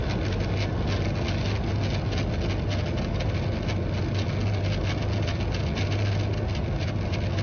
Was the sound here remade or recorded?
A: recorded